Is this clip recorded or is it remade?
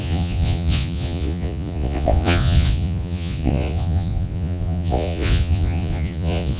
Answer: remade